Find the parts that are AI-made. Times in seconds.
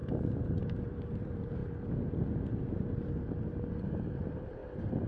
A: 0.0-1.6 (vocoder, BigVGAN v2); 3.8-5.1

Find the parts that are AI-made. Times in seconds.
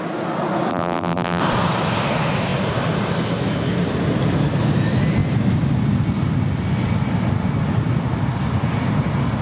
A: 0.7-1.4 (vocoder, BigVGAN v2)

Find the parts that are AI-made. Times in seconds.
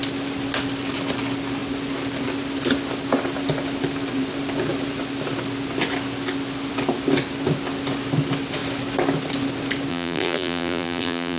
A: 9.9-11.4 (vocoder, BigVGAN v2)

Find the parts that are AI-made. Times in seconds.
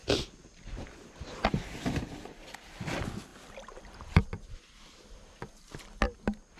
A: 0.0-1.1 (vocoder, BigVGAN v2); 3.3-5.6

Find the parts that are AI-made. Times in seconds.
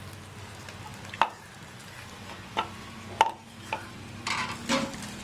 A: none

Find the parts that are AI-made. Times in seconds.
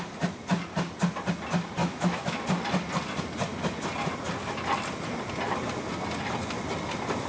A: 1.8-2.4 (autoencoder, DAC-VAE)